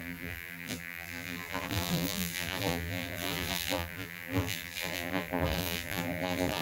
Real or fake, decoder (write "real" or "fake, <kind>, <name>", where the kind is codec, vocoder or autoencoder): fake, vocoder, BigVGAN v2